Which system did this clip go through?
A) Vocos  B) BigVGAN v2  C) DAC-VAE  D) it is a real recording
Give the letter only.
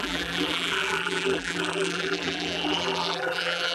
B